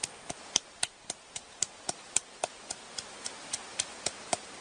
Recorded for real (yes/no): no